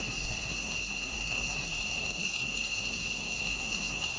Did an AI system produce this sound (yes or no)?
yes